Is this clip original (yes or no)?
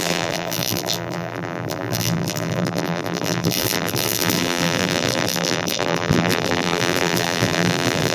no